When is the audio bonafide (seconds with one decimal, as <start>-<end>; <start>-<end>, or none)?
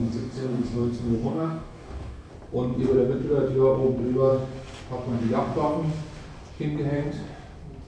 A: 2.3-7.9